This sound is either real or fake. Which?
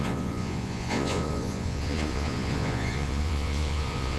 fake